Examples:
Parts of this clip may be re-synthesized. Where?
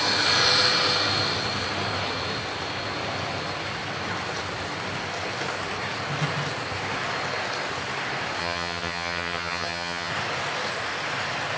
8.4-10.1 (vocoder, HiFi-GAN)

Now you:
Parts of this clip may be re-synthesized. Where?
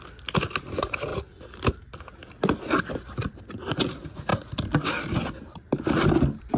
none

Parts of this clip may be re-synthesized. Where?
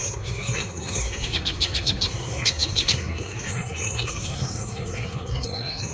0.0-5.9 (codec, SNAC)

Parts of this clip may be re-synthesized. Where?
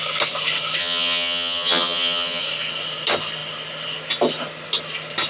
0.8-2.4 (vocoder, HiFi-GAN)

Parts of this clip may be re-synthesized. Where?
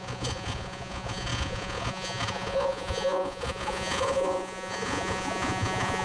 0.0-6.0 (vocoder, Vocos)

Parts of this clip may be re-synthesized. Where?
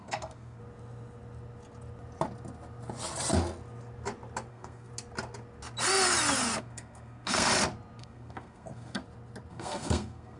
0.0-0.6 (codec, SNAC); 4.5-4.9; 6.6-7.5; 8.0-9.0; 9.5-10.4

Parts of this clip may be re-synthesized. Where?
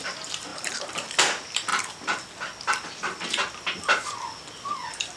0.5-1.1 (vocoder, BigVGAN v2)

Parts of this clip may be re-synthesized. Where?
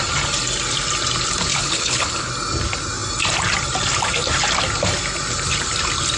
1.5-2.3 (codec, HILCodec)